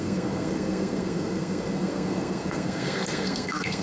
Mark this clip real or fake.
fake